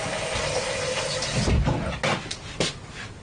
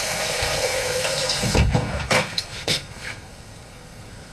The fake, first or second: second